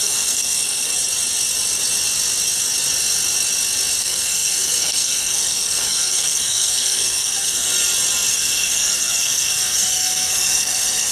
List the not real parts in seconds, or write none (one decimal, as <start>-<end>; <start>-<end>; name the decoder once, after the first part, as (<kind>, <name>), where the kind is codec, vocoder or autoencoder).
0.0-0.9 (codec, SNAC); 4.0-7.7; 8.3-11.1

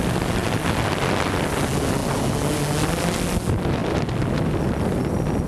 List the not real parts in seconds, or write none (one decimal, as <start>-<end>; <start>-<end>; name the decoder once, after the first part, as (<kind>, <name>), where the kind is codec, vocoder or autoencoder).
none

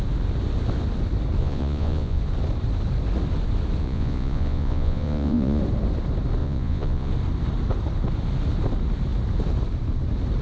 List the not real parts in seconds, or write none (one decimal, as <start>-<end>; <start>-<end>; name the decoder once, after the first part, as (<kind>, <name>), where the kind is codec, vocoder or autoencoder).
1.4-2.2 (vocoder, Vocos); 3.8-5.6; 6.4-7.1

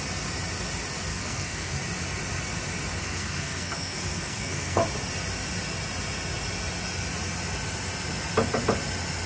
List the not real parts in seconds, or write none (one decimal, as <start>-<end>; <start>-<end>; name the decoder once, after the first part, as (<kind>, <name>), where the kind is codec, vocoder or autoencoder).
1.1-1.8 (codec, SNAC); 3.0-4.8

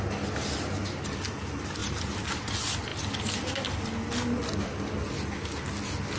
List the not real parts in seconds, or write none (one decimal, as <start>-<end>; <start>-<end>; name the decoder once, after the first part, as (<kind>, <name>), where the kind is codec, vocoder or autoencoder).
1.8-2.5 (vocoder, BigVGAN v2)